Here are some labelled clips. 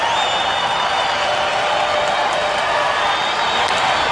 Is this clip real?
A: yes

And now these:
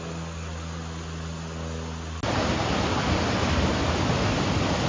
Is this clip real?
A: yes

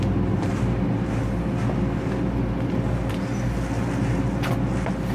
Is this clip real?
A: yes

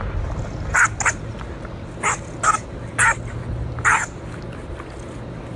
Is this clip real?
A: yes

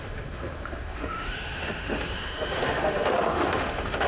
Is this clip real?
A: no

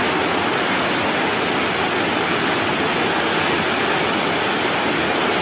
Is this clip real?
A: yes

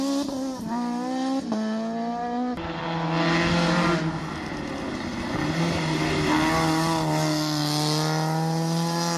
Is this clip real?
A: yes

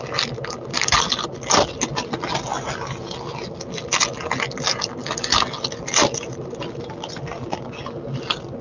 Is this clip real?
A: yes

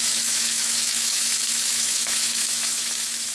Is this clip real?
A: no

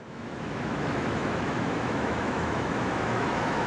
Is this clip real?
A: no